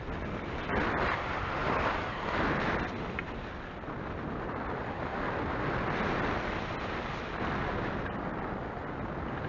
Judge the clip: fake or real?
real